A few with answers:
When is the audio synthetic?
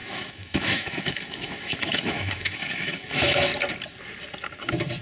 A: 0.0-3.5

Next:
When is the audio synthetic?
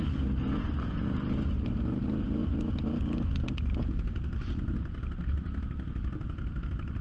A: none